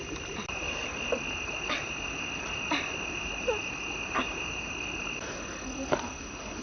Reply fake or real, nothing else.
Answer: real